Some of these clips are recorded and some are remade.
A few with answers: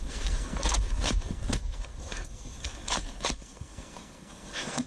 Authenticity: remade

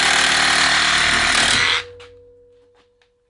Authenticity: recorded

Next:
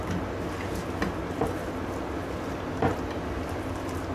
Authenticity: recorded